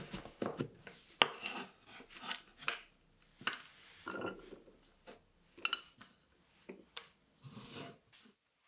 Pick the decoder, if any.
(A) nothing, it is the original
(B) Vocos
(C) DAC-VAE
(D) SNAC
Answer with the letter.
A